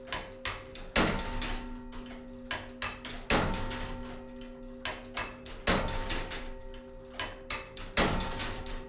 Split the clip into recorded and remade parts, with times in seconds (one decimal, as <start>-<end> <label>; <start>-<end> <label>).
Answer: 0.0-8.9 recorded